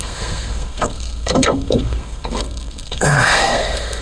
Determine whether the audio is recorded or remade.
remade